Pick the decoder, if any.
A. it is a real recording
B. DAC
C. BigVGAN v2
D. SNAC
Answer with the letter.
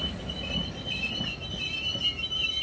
A